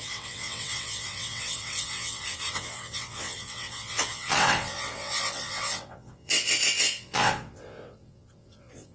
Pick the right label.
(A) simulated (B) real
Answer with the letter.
A